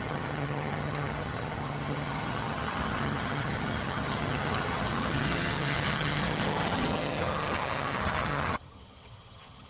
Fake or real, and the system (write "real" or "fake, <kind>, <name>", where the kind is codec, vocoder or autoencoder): fake, vocoder, HiFi-GAN